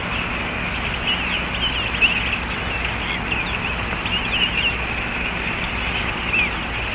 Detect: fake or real real